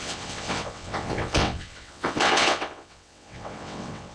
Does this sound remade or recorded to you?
remade